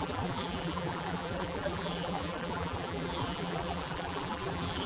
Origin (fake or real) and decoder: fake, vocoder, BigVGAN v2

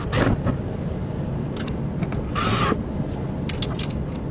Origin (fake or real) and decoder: real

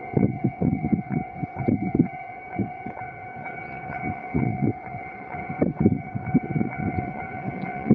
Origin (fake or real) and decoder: fake, vocoder, WaveNeXt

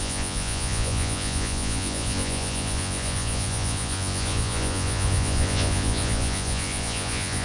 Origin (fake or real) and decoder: fake, vocoder, Vocos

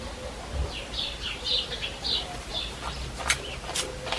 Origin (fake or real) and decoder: fake, vocoder, BigVGAN v2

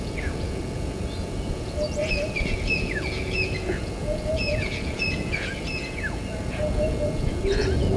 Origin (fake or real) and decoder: fake, vocoder, Vocos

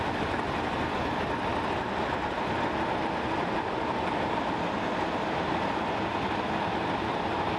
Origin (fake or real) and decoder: real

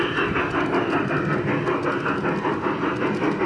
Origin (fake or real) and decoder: real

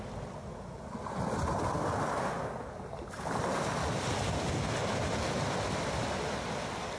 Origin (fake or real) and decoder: real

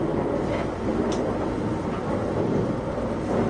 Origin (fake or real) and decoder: real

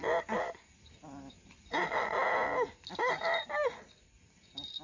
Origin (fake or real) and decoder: real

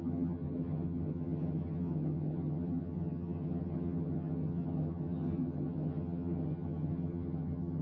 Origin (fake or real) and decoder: fake, vocoder, HiFi-GAN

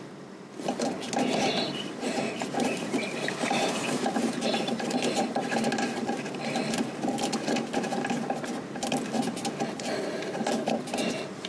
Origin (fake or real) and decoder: real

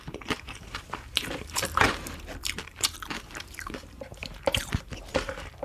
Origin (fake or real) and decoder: fake, vocoder, BigVGAN v2